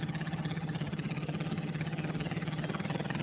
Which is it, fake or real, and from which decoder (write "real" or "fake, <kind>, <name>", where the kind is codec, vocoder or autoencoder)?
fake, vocoder, HiFi-GAN